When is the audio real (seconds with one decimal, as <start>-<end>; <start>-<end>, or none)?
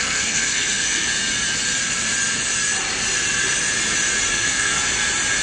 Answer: 1.1-4.3; 4.8-5.4